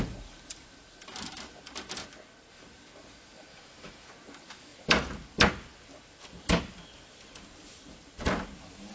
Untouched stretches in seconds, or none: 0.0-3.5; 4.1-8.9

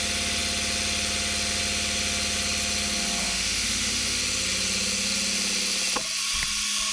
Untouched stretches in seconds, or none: 0.0-3.2; 4.2-6.9

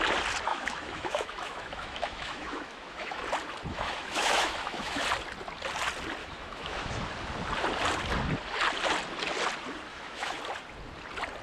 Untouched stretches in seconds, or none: 0.0-0.5; 3.2-3.7; 5.0-6.2; 7.0-9.9; 10.4-11.4